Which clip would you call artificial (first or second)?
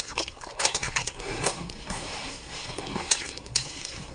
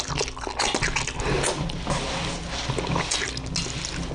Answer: first